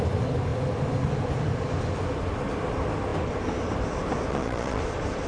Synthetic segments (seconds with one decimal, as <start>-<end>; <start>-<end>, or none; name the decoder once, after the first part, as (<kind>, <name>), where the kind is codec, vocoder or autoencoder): 4.3-4.8 (vocoder, Vocos)

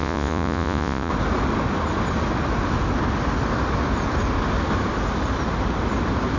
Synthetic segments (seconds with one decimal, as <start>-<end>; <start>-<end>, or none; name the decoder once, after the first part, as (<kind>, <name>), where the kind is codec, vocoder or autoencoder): 0.0-1.1 (vocoder, Vocos)